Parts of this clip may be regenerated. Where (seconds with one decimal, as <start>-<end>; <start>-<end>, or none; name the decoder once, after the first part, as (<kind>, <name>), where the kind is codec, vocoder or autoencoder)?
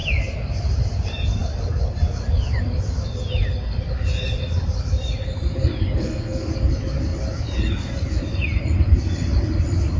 6.0-6.5 (codec, SNAC)